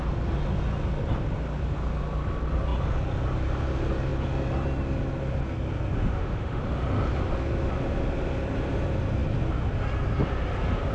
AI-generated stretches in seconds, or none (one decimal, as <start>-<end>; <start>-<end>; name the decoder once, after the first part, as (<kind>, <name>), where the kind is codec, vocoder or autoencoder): 6.0-6.6 (autoencoder, DAC-VAE)